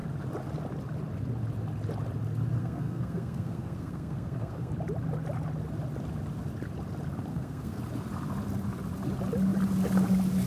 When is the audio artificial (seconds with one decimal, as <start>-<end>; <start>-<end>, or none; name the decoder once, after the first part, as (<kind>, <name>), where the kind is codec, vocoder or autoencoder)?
2.6-4.7 (codec, SNAC); 7.3-7.8